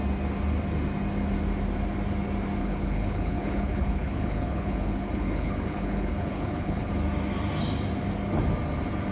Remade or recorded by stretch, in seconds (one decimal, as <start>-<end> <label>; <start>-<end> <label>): 0.0-2.6 recorded; 2.6-6.9 remade; 6.9-9.1 recorded